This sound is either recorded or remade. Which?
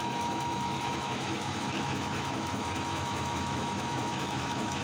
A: remade